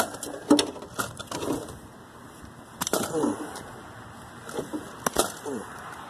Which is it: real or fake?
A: real